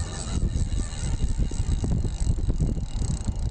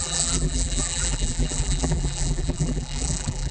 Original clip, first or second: first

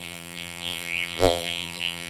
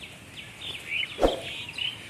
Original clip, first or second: second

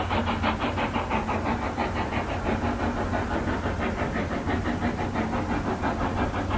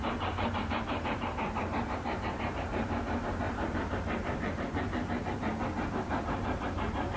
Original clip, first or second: first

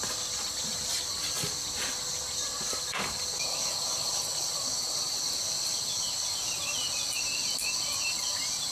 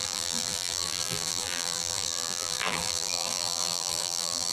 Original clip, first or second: first